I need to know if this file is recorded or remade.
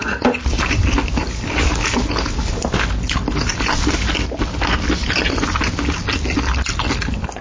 recorded